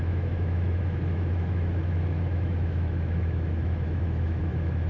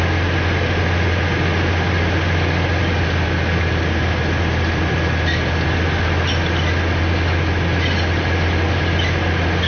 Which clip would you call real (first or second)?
second